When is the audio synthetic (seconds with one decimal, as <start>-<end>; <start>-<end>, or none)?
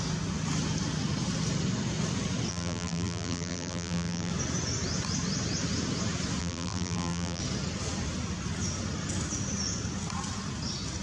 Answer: 2.5-4.3; 6.4-7.4